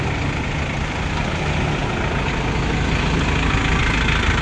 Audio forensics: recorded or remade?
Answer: recorded